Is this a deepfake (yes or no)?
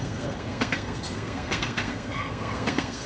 yes